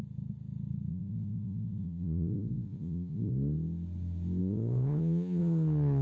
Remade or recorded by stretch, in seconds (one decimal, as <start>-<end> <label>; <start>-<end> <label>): 0.0-0.9 recorded; 0.9-3.3 remade; 3.3-4.4 recorded; 4.4-5.4 remade; 5.4-6.0 recorded